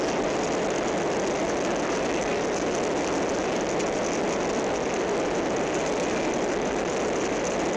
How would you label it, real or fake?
real